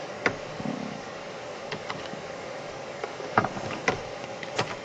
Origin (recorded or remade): remade